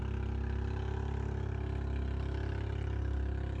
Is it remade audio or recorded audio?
recorded